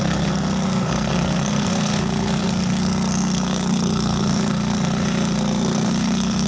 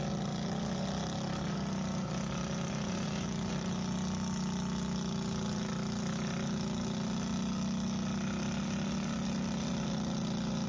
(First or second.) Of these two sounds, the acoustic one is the second